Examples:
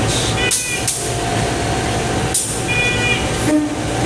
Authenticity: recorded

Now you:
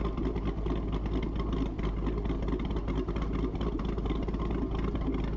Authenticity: recorded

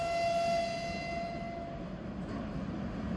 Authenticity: recorded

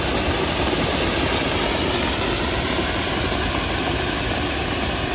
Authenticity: recorded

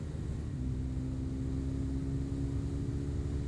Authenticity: recorded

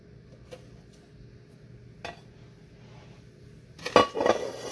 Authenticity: recorded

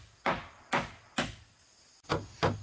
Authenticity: recorded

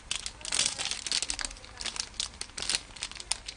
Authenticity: recorded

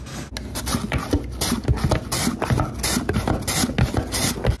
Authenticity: recorded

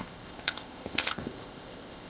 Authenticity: remade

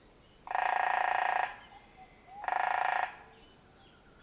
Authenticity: recorded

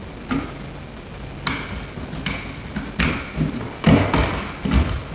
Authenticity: recorded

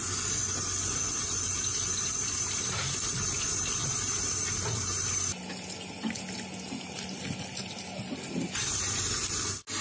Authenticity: recorded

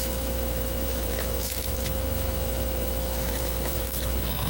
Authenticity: remade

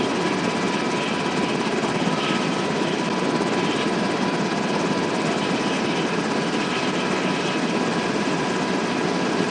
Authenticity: recorded